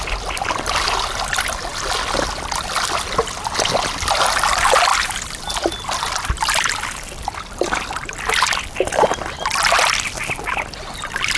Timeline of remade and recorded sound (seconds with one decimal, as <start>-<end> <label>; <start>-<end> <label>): 0.0-11.4 recorded